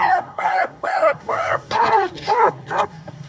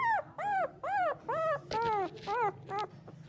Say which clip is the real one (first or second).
second